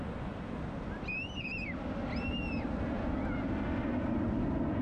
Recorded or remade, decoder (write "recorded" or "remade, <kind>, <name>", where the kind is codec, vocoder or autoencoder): recorded